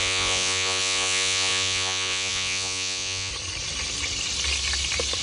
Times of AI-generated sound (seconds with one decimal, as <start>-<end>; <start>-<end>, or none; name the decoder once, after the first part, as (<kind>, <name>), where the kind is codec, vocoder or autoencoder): 0.0-3.3 (vocoder, Vocos)